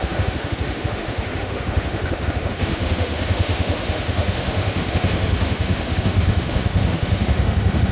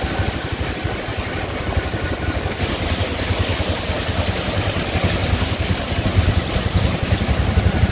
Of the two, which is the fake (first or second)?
first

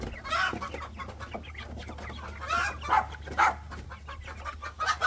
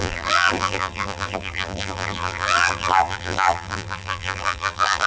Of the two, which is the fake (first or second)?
second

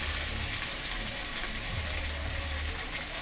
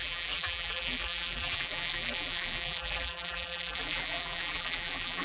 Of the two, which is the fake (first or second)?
second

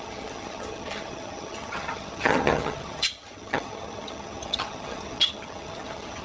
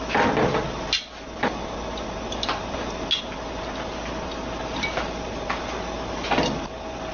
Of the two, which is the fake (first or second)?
first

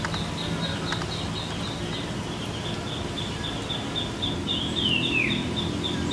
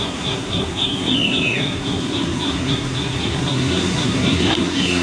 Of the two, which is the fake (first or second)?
second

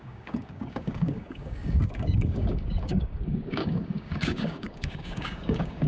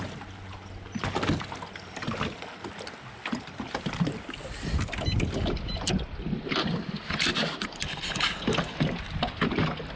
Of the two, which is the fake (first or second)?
first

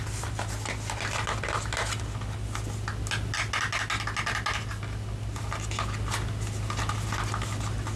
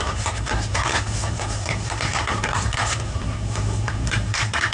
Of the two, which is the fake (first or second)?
second